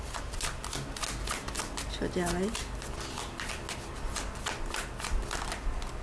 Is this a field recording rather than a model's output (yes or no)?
yes